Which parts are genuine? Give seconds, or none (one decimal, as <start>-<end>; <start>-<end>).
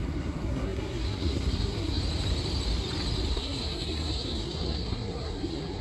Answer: 2.0-3.3